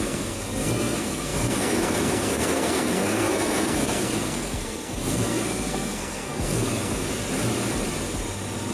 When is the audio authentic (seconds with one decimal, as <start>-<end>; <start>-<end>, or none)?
7.2-8.7